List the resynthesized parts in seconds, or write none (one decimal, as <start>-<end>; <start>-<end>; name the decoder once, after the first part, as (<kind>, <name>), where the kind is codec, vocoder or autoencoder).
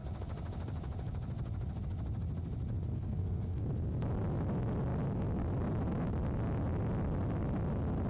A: 2.9-3.6 (codec, SNAC)